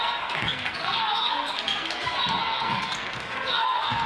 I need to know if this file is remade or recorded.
remade